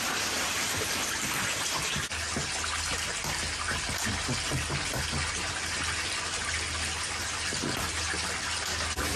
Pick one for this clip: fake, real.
real